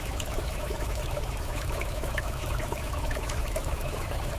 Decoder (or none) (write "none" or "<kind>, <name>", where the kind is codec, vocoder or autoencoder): autoencoder, DAC-VAE